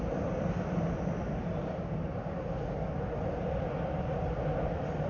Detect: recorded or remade recorded